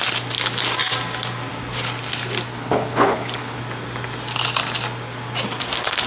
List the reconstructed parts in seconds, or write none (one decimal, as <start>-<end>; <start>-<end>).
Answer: 2.5-3.6